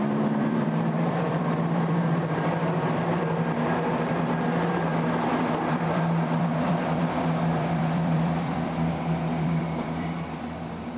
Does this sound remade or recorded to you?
remade